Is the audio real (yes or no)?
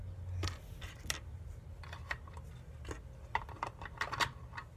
yes